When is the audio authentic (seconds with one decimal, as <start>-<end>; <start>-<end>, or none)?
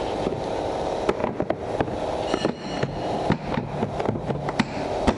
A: 0.0-5.2